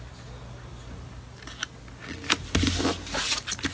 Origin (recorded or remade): recorded